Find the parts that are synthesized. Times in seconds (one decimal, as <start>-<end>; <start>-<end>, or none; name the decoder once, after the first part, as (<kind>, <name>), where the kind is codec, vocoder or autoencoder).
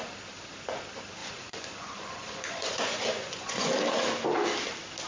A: 1.2-3.7 (vocoder, Vocos)